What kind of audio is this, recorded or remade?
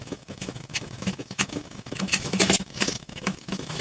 remade